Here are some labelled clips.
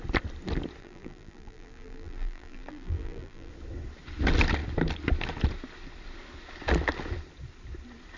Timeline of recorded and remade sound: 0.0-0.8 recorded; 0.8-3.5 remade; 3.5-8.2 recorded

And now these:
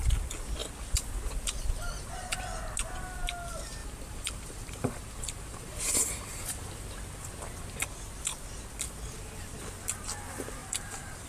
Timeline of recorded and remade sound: 0.0-3.8 recorded; 3.8-6.7 remade; 6.7-10.6 recorded; 10.6-11.3 remade